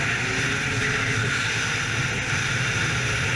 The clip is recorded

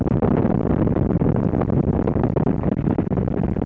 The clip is recorded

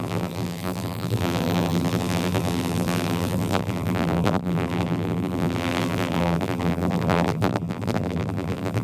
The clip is remade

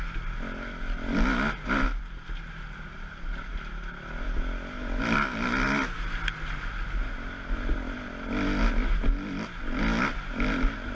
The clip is recorded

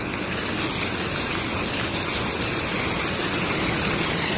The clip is recorded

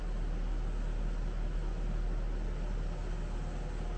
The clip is recorded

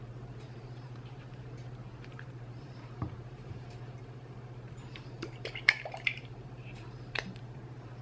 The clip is remade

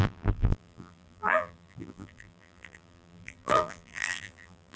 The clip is remade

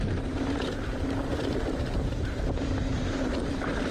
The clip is remade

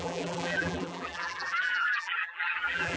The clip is remade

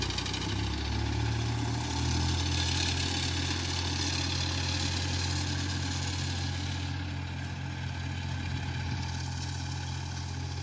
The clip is recorded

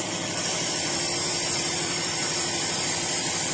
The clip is remade